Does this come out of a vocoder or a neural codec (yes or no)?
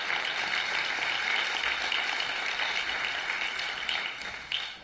no